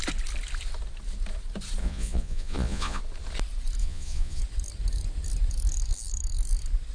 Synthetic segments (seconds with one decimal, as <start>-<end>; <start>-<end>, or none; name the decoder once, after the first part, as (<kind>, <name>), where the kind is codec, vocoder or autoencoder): 1.8-3.0 (vocoder, Vocos); 3.8-4.4